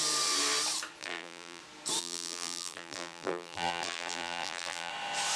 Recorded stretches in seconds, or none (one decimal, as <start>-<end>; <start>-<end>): 0.0-1.0; 1.6-2.0; 4.9-5.4